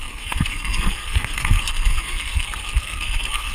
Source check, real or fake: fake